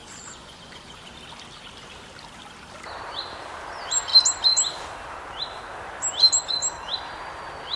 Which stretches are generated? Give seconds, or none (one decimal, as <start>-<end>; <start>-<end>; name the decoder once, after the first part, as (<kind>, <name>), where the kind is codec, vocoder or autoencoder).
0.0-1.1 (vocoder, Vocos)